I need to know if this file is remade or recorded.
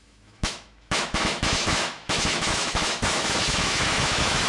remade